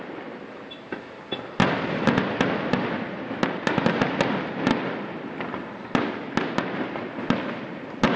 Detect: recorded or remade recorded